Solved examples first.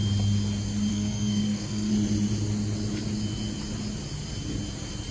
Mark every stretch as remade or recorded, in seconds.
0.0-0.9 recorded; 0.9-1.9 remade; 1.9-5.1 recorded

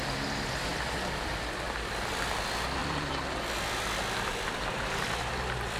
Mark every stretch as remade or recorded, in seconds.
0.0-2.8 recorded; 2.8-3.6 remade; 3.6-4.3 recorded; 4.3-5.3 remade; 5.3-5.8 recorded

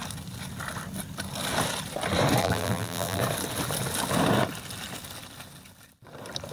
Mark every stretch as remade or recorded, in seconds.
0.0-2.4 recorded; 2.4-3.2 remade; 3.2-6.5 recorded

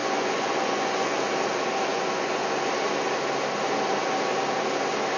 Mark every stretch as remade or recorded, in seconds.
0.0-1.2 remade; 1.2-1.9 recorded; 1.9-2.7 remade; 2.7-5.2 recorded

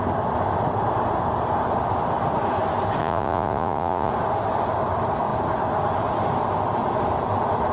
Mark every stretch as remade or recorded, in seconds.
0.0-3.0 recorded; 3.0-4.1 remade; 4.1-7.7 recorded

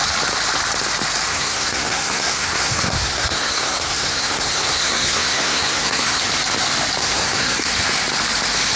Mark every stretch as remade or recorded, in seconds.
0.0-1.3 recorded; 1.3-6.2 remade; 6.2-7.0 recorded; 7.0-7.7 remade; 7.7-8.8 recorded